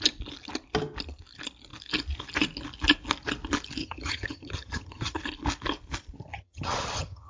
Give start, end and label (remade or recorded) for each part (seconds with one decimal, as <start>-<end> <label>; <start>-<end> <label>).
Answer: 0.0-3.8 recorded; 3.8-5.2 remade; 5.2-6.3 recorded; 6.3-7.3 remade